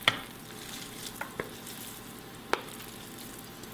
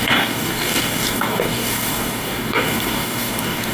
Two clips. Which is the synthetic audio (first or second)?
second